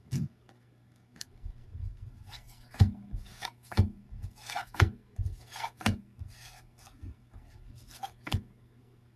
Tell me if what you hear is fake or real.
fake